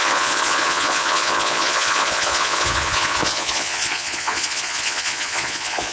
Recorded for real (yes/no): no